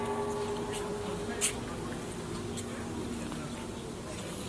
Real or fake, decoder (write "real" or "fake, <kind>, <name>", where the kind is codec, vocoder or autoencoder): real